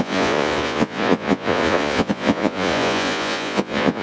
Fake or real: fake